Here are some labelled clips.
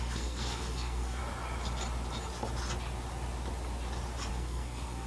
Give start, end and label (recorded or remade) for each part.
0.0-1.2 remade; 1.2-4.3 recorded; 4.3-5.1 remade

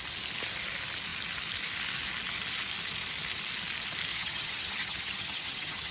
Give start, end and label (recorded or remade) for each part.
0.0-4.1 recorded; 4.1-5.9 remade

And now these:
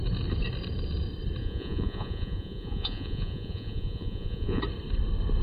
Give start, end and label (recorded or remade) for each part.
0.0-1.4 recorded; 1.4-4.6 remade; 4.6-5.4 recorded

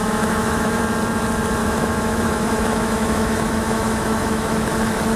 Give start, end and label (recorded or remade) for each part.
0.0-0.8 remade; 0.8-1.6 recorded; 1.6-4.7 remade; 4.7-5.2 recorded